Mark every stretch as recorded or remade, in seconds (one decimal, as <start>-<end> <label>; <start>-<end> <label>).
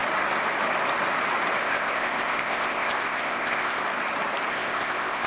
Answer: 0.0-1.6 recorded; 1.6-3.8 remade; 3.8-4.5 recorded; 4.5-5.3 remade